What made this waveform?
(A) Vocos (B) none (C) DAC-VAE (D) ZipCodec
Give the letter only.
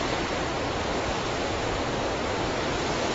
B